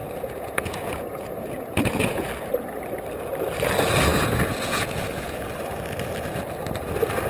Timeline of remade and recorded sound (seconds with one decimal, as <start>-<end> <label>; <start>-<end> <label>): 0.0-2.3 remade; 2.3-4.1 recorded; 4.1-5.4 remade; 5.4-7.3 recorded